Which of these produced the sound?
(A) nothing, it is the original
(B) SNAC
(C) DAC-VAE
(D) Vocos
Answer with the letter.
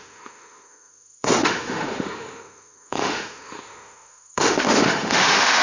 C